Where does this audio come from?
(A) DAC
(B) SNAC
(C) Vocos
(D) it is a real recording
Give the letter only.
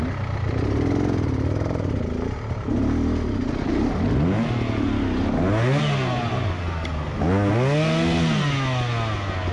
D